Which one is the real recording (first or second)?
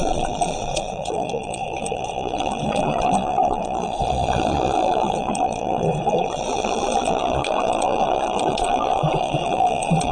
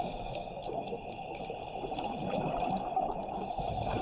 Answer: second